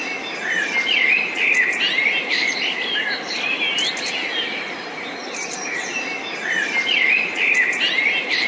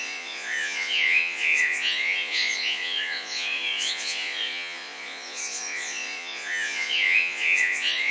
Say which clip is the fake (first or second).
second